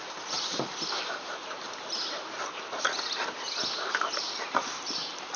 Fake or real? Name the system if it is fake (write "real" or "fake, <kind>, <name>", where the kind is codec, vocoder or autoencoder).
fake, vocoder, BigVGAN v2